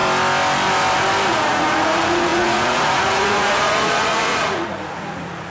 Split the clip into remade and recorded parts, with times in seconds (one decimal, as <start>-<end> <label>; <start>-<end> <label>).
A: 0.0-1.3 recorded; 1.3-5.5 remade